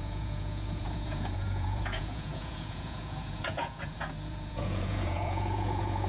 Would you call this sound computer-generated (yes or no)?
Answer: yes